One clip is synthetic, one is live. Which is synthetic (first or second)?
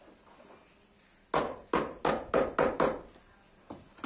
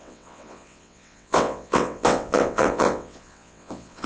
second